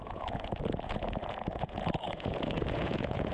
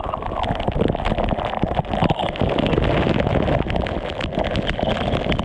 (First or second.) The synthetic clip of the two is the first